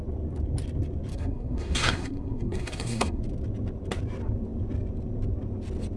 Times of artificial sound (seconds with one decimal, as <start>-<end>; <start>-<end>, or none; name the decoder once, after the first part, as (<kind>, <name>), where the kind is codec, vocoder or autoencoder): 1.1-3.2 (codec, SNAC)